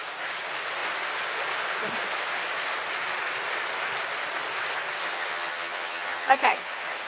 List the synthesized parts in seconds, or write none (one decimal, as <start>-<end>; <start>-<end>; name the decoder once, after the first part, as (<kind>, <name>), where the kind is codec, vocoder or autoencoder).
5.0-7.1 (vocoder, HiFi-GAN)